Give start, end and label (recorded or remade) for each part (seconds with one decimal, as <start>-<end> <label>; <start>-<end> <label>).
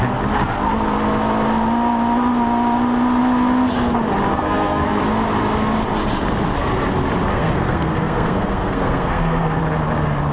0.0-4.3 recorded; 4.3-5.0 remade; 5.0-7.3 recorded; 7.3-9.6 remade; 9.6-10.3 recorded